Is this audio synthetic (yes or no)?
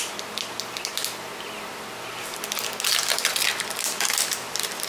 no